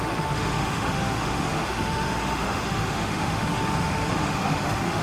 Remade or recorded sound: remade